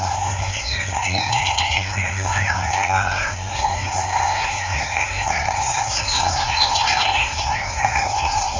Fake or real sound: fake